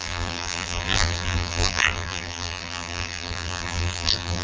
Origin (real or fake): fake